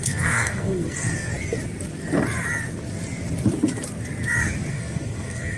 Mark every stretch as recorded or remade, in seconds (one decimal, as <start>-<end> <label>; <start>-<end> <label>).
0.0-1.3 remade; 1.3-4.7 recorded; 4.7-5.6 remade